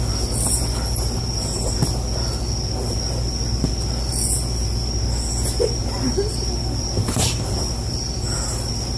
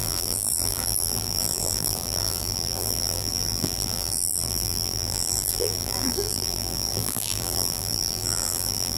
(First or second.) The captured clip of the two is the first